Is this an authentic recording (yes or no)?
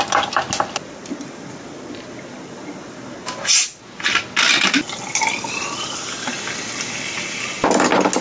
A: yes